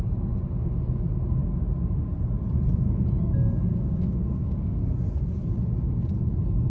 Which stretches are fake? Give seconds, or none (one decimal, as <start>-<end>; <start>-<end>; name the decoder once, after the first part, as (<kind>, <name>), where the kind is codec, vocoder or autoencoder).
3.7-4.8 (codec, SNAC)